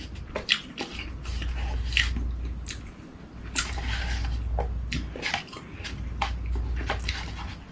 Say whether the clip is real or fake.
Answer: real